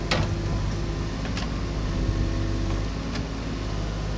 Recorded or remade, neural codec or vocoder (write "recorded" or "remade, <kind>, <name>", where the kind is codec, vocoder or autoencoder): recorded